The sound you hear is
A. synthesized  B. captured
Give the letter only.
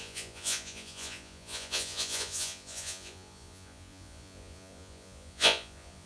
A